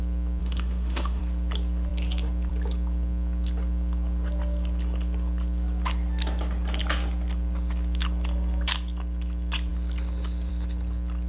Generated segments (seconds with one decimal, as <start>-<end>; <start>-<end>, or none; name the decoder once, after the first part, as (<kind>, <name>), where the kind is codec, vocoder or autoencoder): 0.4-1.2 (autoencoder, DAC-VAE)